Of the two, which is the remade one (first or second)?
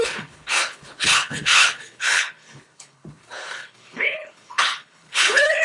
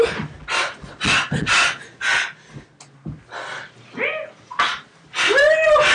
first